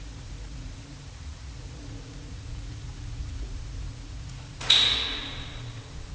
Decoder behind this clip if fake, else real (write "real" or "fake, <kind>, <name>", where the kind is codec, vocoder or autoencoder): fake, vocoder, Vocos